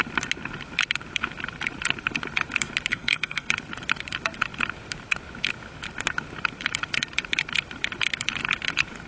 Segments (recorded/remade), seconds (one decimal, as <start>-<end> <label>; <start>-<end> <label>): 0.0-2.9 recorded; 2.9-3.5 remade; 3.5-9.1 recorded